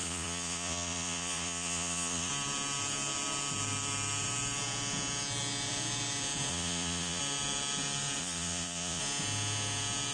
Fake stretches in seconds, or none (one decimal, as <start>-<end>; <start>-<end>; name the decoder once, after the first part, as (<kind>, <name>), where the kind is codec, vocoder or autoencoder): 0.0-2.3 (vocoder, Vocos); 6.5-7.2; 8.2-9.0